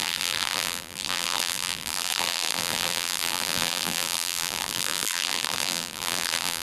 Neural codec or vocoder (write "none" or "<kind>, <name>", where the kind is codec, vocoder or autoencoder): vocoder, BigVGAN v2